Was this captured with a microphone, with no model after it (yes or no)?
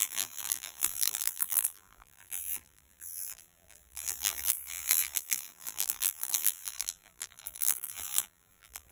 no